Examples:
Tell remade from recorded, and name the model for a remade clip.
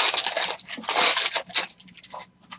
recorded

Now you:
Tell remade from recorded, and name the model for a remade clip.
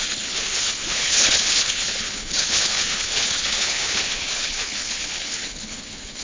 remade, codec, HILCodec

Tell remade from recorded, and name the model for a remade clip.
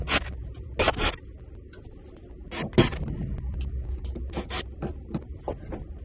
recorded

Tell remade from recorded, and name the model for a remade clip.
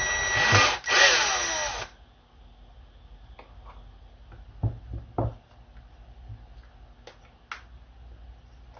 recorded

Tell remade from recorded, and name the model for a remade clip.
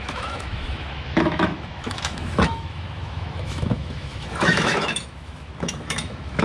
remade, autoencoder, DAC-VAE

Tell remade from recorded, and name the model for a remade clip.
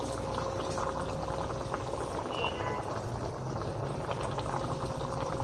recorded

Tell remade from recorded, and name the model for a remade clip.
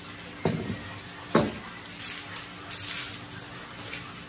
recorded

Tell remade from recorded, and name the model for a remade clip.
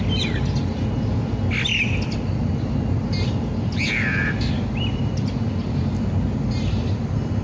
recorded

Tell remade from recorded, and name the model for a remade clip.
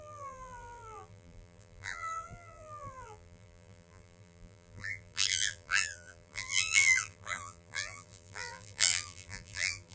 remade, vocoder, BigVGAN v2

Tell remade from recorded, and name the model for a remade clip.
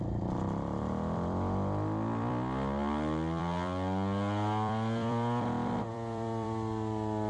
remade, vocoder, BigVGAN v2